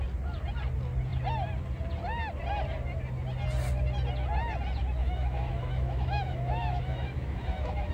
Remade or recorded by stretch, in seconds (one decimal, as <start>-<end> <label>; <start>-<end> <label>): 0.0-5.0 recorded; 5.0-7.9 remade